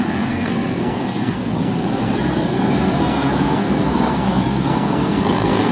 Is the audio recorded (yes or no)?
no